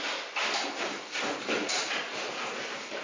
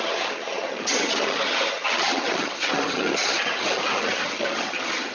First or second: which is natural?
first